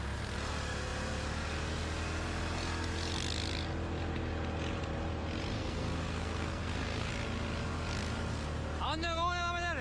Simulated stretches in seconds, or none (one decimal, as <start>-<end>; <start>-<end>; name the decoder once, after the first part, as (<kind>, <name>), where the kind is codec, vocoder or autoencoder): 5.5-7.1 (codec, SNAC)